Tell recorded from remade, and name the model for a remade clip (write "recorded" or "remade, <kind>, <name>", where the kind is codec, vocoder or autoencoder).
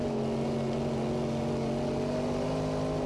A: recorded